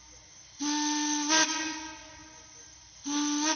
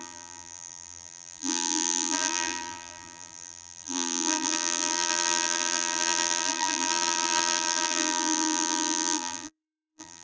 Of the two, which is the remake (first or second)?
second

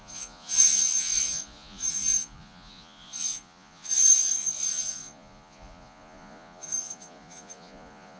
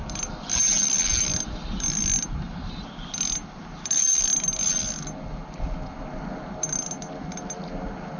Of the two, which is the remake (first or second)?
first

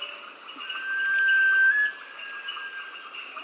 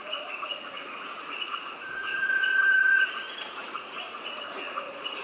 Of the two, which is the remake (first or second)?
second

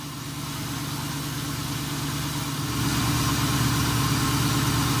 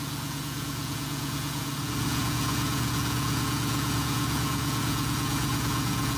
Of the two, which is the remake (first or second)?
second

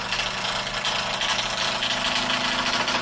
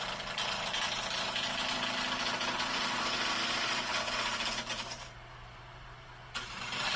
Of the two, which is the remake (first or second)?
second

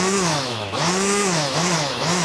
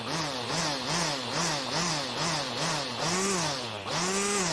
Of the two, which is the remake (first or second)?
first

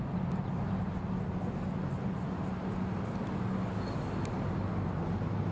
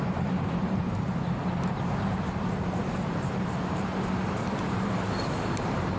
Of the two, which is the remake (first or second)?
second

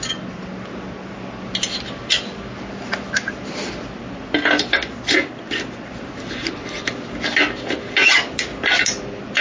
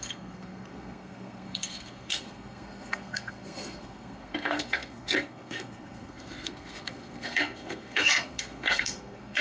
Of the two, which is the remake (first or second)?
second